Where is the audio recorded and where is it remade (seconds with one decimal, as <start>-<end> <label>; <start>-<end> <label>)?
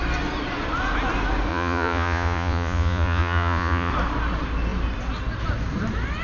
0.0-1.5 recorded; 1.5-3.9 remade; 3.9-6.2 recorded